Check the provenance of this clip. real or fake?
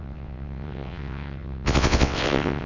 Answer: fake